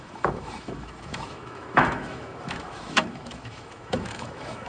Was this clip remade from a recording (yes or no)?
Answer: yes